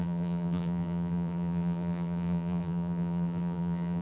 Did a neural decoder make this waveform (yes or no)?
yes